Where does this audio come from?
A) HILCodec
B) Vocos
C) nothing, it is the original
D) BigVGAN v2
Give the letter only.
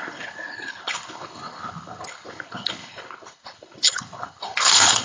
A